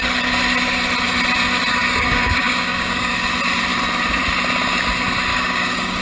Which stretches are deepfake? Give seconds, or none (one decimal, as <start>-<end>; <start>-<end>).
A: 1.7-3.1; 5.3-6.0